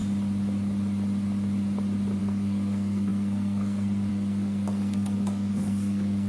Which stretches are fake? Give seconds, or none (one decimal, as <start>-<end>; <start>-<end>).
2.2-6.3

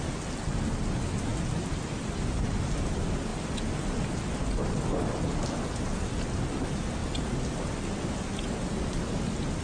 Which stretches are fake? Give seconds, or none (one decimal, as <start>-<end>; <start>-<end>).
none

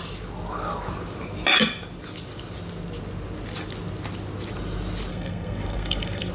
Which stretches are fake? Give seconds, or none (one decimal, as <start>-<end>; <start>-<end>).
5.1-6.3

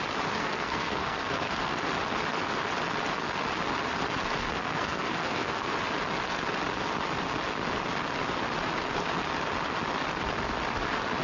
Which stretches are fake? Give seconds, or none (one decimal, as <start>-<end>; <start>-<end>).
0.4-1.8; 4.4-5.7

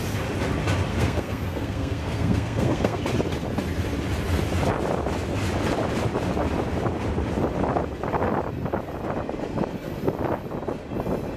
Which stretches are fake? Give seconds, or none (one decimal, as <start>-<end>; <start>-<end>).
0.9-3.0

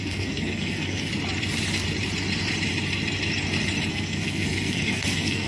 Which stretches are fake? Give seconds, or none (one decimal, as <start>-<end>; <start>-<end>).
0.0-1.1; 3.9-5.5

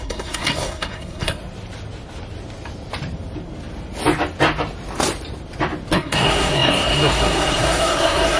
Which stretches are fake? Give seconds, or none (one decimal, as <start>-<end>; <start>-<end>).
0.0-1.4; 5.9-8.4

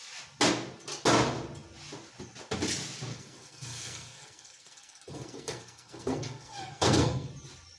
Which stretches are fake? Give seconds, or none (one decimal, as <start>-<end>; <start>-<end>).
3.1-7.3